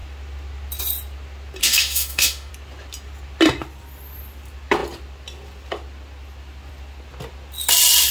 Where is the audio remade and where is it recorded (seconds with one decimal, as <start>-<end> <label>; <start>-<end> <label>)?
0.0-1.6 recorded; 1.6-2.5 remade; 2.5-8.1 recorded